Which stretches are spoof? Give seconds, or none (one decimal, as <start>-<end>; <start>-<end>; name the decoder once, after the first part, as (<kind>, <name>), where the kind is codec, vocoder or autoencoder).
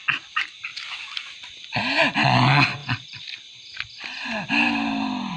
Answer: none